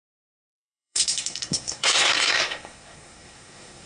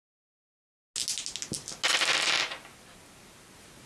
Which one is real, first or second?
second